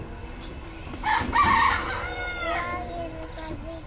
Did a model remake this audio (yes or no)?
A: no